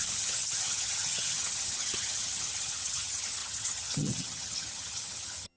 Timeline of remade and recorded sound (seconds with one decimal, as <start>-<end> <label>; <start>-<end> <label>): 0.0-5.6 remade